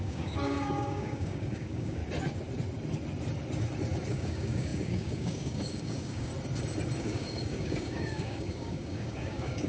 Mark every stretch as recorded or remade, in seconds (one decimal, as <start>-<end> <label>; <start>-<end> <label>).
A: 0.0-2.0 remade; 2.0-4.1 recorded; 4.1-6.3 remade; 6.3-7.0 recorded; 7.0-9.7 remade